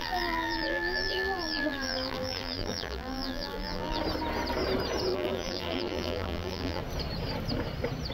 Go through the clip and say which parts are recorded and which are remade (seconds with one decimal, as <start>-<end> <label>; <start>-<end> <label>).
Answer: 0.0-4.0 remade; 4.0-5.1 recorded; 5.1-6.8 remade; 6.8-8.1 recorded

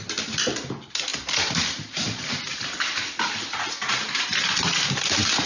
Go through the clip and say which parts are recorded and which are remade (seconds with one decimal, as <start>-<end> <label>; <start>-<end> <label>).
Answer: 0.0-5.5 recorded

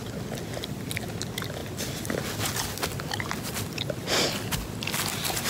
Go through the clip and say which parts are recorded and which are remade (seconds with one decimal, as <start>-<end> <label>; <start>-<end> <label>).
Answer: 0.0-5.5 recorded

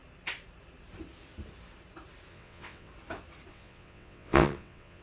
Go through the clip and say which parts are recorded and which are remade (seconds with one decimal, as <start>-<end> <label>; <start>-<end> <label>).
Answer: 0.0-2.3 recorded; 2.3-2.9 remade; 2.9-3.5 recorded; 3.5-5.0 remade

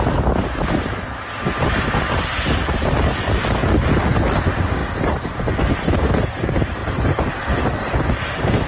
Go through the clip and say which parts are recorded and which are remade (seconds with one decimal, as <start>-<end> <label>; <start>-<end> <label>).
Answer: 0.0-4.8 recorded; 4.8-6.1 remade; 6.1-6.8 recorded; 6.8-7.3 remade; 7.3-8.7 recorded

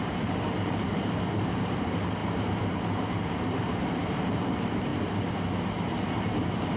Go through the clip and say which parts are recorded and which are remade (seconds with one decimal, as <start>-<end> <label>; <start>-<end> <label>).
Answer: 0.0-6.8 remade

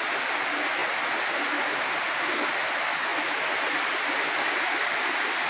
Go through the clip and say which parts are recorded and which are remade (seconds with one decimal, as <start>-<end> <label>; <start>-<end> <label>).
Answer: 0.0-5.5 recorded